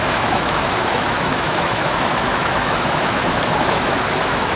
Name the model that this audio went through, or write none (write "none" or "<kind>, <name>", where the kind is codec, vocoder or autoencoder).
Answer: autoencoder, DAC-VAE